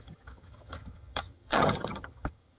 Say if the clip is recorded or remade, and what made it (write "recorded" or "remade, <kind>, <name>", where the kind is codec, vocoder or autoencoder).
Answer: remade, vocoder, HiFi-GAN